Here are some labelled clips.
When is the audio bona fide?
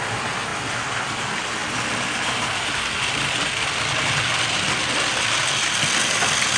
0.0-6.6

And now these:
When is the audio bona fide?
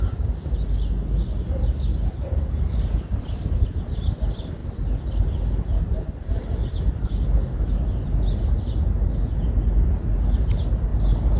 0.0-11.4